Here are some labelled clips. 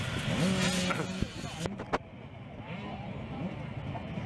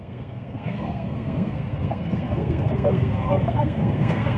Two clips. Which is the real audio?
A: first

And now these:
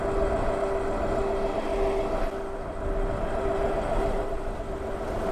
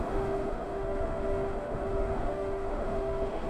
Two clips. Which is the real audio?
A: first